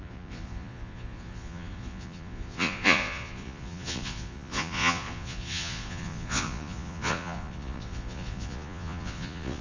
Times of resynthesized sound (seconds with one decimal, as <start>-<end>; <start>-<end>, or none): 0.0-9.6